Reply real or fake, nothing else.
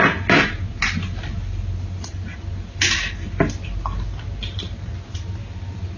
real